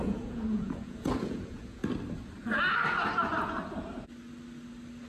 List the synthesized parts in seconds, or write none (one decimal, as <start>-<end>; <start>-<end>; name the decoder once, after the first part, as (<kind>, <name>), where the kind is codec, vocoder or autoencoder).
0.0-1.8 (vocoder, Vocos)